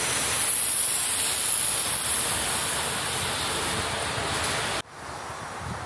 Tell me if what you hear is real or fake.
real